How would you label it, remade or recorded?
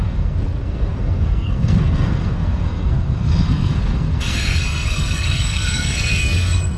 remade